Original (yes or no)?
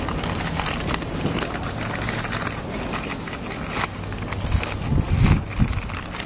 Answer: yes